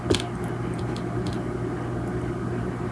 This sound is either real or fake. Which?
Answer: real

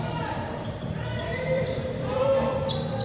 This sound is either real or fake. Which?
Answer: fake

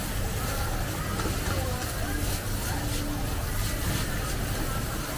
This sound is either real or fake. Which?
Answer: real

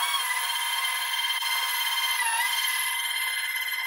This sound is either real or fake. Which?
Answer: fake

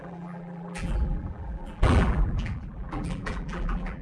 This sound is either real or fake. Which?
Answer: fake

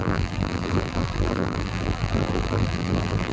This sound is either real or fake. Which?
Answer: fake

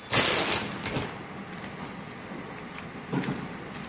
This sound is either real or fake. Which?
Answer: real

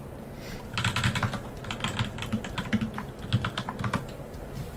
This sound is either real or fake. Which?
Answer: real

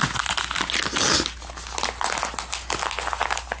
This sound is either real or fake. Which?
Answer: real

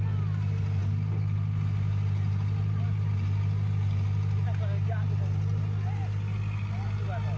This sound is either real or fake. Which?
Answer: real